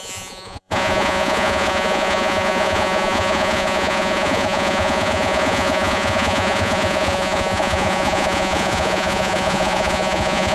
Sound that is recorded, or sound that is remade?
remade